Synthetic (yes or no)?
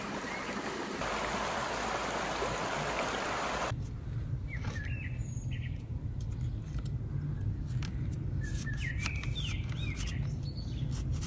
no